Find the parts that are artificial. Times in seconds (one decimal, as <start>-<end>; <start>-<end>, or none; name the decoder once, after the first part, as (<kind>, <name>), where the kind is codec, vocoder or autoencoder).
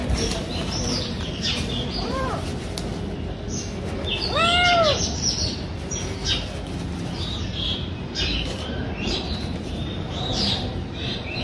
0.0-2.5 (vocoder, BigVGAN v2); 7.2-11.4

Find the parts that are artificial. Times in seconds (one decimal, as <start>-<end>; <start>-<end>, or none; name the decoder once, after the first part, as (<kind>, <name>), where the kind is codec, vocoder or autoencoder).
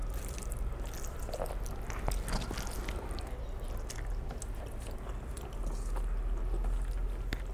0.0-1.5 (vocoder, BigVGAN v2)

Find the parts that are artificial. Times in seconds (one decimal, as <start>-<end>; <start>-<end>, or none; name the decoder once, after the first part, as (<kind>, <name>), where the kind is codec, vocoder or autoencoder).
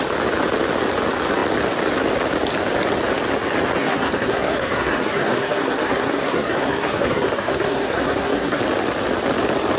3.8-8.6 (codec, SNAC)